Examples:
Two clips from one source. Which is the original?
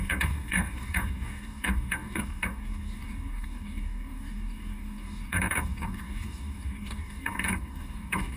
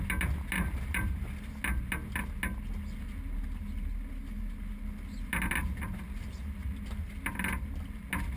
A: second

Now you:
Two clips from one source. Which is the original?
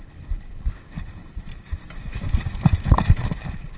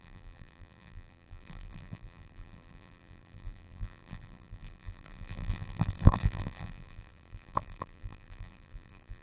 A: first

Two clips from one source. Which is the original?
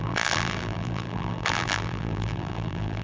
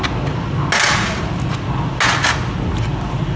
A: second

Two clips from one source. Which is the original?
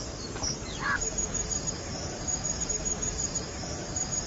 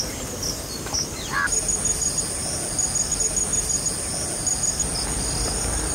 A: second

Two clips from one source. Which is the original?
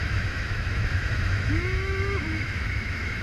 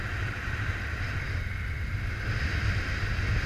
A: second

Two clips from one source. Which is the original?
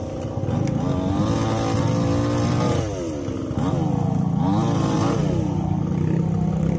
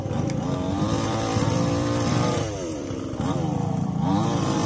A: first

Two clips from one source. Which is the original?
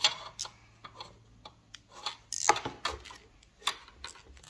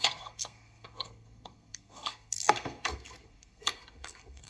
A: first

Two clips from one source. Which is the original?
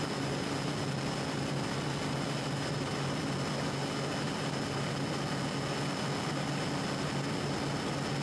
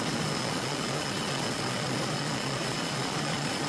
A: first